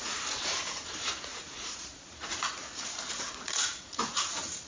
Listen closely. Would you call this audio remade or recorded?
remade